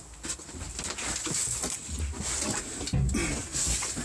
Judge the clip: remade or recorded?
recorded